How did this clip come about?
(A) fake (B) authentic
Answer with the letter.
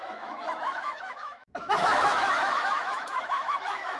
A